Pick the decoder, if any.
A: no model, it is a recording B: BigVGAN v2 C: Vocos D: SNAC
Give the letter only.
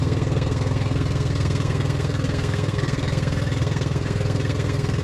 D